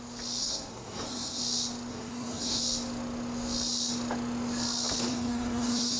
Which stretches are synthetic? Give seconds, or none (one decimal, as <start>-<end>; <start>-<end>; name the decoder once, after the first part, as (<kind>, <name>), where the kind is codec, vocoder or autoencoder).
0.4-1.4 (codec, SNAC); 1.9-2.6; 5.1-6.0